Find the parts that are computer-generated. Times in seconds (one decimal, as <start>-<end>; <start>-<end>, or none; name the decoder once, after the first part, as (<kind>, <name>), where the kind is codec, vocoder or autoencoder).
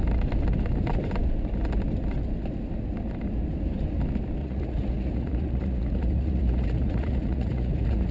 4.4-8.1 (vocoder, Vocos)